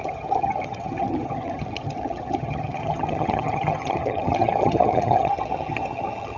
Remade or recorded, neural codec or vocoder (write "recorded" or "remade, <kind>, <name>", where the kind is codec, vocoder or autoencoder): remade, vocoder, HiFi-GAN